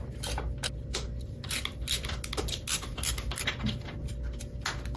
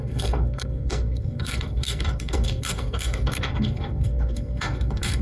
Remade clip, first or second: second